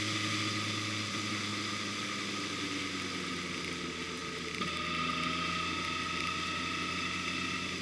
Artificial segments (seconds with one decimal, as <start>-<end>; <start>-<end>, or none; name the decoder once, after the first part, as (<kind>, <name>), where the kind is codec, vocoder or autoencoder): none